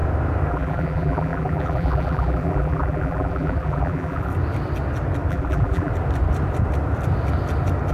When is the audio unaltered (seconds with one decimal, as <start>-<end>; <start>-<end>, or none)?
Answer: 0.0-0.5; 4.3-5.3; 5.9-7.9